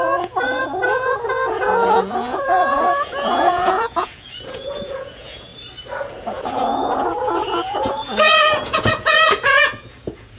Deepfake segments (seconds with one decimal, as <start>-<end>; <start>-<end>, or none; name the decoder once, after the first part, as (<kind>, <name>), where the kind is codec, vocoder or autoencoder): 0.0-5.5 (vocoder, Vocos); 6.2-10.4